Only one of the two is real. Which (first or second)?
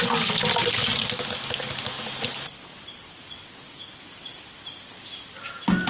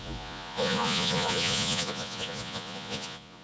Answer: first